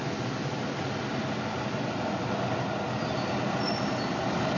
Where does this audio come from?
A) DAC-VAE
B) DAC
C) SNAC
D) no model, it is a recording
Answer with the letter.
D